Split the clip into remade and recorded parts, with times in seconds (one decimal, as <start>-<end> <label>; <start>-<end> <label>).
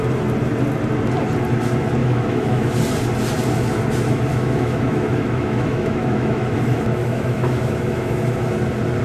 0.0-2.0 recorded; 2.0-2.7 remade; 2.7-4.3 recorded; 4.3-8.5 remade; 8.5-9.0 recorded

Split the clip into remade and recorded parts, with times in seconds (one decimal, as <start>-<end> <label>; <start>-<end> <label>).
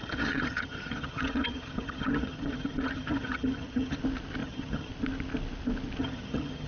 0.0-4.0 remade; 4.0-4.4 recorded; 4.4-4.9 remade; 4.9-6.0 recorded; 6.0-6.7 remade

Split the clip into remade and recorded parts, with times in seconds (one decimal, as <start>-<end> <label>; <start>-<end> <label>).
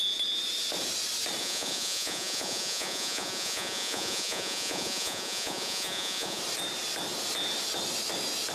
0.0-1.4 recorded; 1.4-6.4 remade; 6.4-8.5 recorded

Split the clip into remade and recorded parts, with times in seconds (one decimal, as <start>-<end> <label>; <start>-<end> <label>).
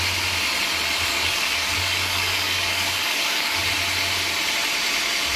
0.0-1.1 recorded; 1.1-3.7 remade; 3.7-5.4 recorded